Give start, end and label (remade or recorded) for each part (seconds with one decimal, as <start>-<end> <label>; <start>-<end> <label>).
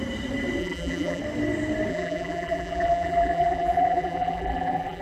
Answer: 0.0-0.6 recorded; 0.6-1.2 remade; 1.2-1.9 recorded; 1.9-5.0 remade